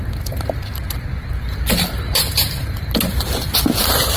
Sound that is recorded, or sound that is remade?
remade